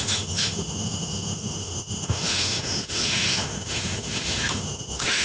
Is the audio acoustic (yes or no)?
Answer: no